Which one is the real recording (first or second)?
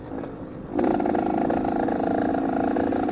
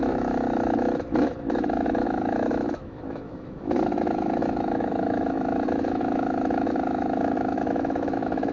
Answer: first